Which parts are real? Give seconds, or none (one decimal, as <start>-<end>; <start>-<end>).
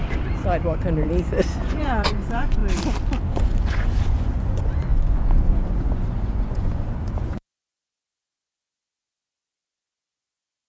0.0-0.6; 2.6-3.3